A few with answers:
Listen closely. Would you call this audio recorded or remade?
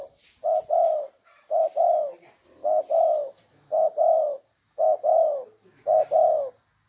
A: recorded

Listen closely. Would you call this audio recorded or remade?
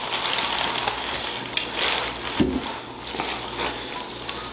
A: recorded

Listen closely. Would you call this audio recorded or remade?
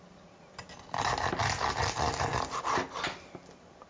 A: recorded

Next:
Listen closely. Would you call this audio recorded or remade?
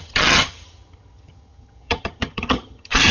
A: remade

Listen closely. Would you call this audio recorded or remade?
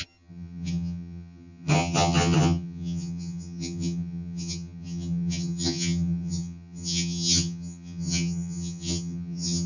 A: remade